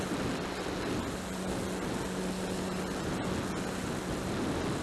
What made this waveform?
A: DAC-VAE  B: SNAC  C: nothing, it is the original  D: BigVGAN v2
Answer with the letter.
C